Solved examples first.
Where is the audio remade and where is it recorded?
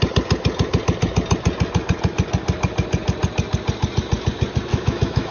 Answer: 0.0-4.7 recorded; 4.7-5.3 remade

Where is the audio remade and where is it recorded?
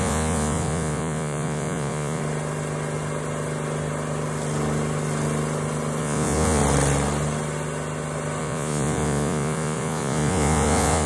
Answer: 0.0-2.2 remade; 2.2-6.0 recorded; 6.0-6.6 remade; 6.6-8.4 recorded; 8.4-11.1 remade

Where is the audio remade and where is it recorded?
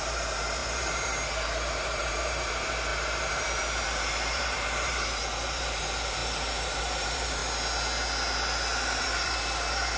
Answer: 0.0-7.4 remade; 7.4-9.0 recorded; 9.0-10.0 remade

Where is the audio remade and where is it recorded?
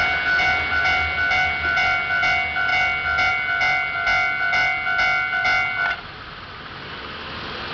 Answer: 0.0-7.7 recorded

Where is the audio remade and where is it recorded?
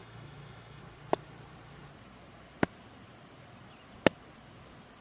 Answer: 0.0-0.8 remade; 0.8-5.0 recorded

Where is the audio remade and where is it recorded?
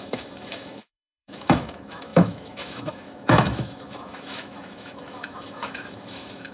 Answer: 0.0-6.5 remade